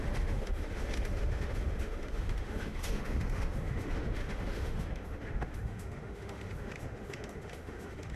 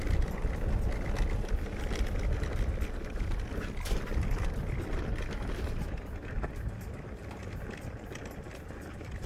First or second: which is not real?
first